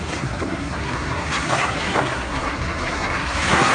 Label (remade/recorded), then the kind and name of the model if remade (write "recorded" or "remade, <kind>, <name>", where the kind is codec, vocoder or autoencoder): remade, codec, SNAC